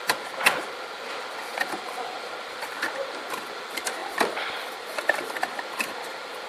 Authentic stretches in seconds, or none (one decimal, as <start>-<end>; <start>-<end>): 0.0-4.0; 6.1-6.5